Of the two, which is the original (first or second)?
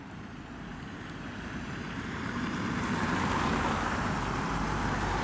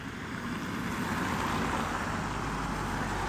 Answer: second